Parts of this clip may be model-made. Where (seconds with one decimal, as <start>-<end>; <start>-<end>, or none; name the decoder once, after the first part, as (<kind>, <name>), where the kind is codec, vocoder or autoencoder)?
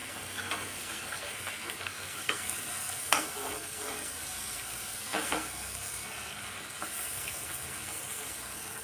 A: 0.0-8.8 (codec, SNAC)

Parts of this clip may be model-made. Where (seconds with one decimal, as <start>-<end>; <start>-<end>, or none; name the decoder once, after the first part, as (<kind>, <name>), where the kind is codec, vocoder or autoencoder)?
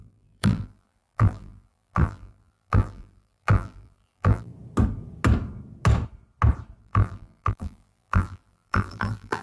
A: 0.0-4.5 (vocoder, BigVGAN v2); 6.8-9.4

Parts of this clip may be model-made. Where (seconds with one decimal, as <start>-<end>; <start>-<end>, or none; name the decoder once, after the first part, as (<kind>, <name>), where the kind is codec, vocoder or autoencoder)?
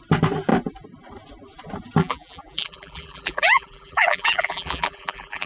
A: 2.0-5.5 (vocoder, BigVGAN v2)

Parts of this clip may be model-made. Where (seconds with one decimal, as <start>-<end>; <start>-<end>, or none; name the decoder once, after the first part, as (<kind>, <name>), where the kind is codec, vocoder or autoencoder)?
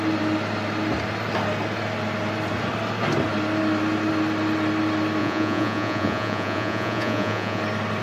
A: 5.2-7.6 (vocoder, Vocos)